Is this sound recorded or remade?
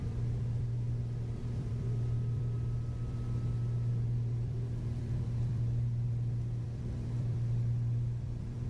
remade